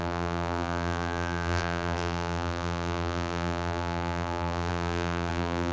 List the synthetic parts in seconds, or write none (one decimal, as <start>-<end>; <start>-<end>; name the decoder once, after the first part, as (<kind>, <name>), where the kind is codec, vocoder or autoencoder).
0.0-5.7 (vocoder, BigVGAN v2)